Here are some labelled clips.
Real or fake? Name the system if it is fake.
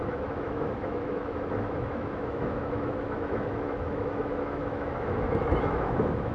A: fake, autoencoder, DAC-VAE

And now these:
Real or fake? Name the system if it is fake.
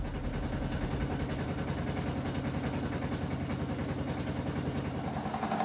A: real